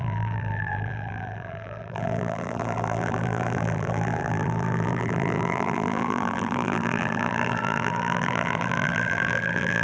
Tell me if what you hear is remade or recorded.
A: remade